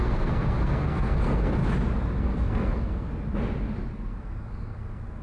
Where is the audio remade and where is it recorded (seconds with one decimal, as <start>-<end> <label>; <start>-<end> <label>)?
0.0-1.6 remade; 1.6-2.2 recorded; 2.2-3.1 remade; 3.1-3.9 recorded; 3.9-5.2 remade